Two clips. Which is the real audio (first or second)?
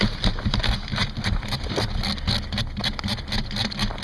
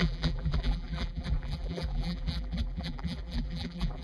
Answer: first